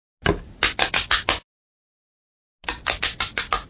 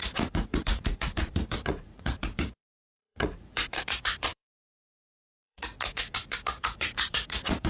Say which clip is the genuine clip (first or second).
first